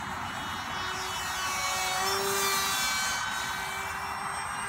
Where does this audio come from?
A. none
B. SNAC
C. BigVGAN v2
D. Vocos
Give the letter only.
A